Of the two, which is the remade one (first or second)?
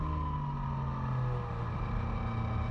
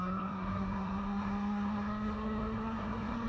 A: second